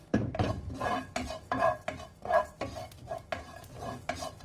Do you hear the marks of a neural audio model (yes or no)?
yes